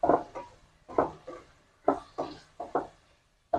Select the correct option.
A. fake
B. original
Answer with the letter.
B